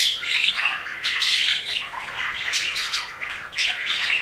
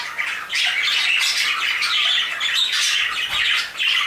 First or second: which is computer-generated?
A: first